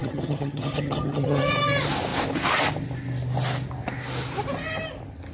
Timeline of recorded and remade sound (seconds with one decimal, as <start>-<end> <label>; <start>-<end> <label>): 0.0-1.5 remade; 1.5-5.3 recorded